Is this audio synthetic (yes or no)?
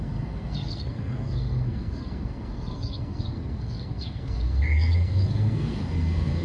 yes